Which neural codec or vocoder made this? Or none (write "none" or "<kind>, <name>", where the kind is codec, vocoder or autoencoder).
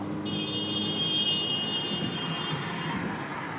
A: none